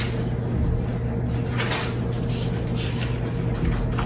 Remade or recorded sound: recorded